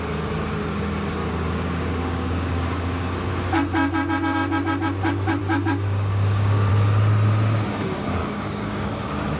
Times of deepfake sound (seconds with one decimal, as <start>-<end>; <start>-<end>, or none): 1.2-3.3; 5.4-6.7; 8.2-8.9